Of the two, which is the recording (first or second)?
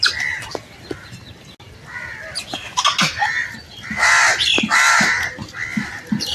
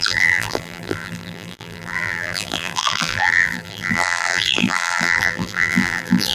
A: first